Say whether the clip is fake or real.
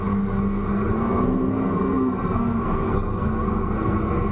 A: fake